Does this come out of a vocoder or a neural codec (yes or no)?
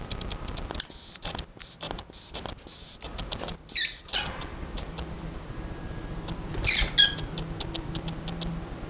no